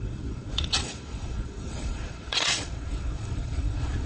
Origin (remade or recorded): remade